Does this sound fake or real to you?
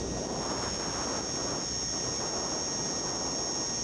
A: real